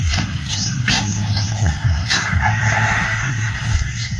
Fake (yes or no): yes